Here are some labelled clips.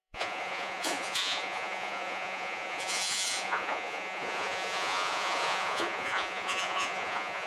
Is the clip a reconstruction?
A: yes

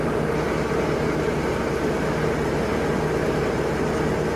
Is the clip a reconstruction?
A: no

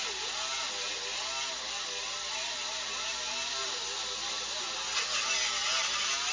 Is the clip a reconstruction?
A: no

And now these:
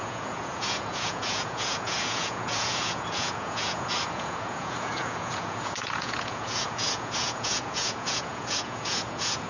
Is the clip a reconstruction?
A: yes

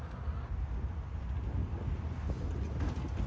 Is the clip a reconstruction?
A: no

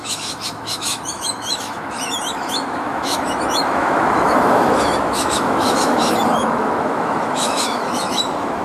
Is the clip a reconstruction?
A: yes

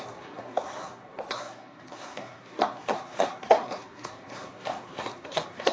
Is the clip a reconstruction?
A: yes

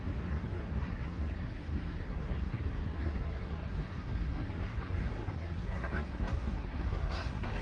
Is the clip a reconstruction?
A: yes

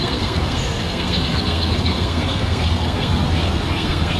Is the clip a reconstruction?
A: yes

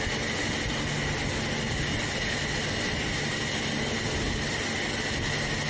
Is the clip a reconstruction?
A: no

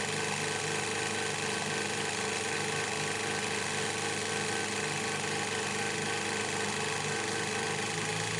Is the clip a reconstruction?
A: no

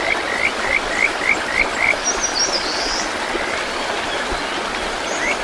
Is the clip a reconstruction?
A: no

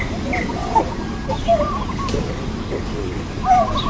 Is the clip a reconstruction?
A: no